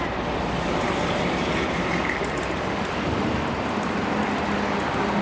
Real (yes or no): yes